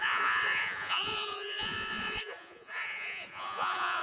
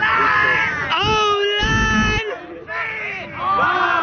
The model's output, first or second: first